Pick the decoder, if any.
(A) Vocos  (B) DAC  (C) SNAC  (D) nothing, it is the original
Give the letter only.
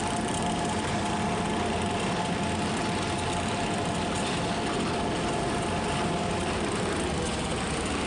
D